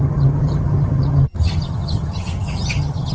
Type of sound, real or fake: fake